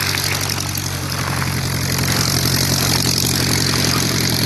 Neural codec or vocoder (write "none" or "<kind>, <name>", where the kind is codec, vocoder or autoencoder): none